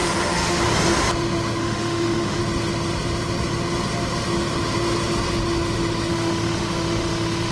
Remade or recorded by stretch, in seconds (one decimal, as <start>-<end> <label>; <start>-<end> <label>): 0.0-0.6 remade; 0.6-1.6 recorded; 1.6-2.4 remade; 2.4-6.1 recorded; 6.1-7.5 remade